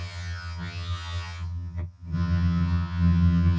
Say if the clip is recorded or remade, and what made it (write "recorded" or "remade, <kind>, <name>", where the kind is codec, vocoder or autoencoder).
remade, vocoder, HiFi-GAN